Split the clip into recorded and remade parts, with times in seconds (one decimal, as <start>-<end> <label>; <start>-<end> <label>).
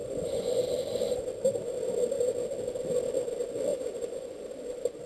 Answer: 0.0-0.6 remade; 0.6-3.7 recorded; 3.7-4.4 remade; 4.4-5.1 recorded